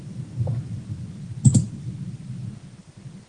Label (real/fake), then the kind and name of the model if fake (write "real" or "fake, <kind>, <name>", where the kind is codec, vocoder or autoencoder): real